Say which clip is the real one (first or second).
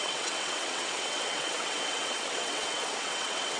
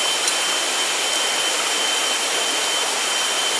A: second